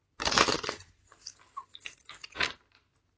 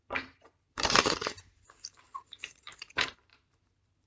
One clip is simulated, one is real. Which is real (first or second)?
first